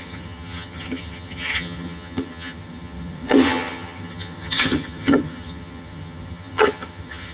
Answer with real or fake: fake